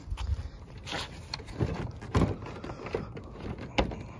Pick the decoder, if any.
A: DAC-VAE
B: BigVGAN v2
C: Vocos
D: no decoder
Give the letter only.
D